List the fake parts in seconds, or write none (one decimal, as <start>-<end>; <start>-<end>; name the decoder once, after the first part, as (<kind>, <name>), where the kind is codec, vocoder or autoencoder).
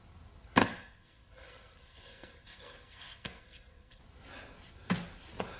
0.6-4.0 (codec, SNAC)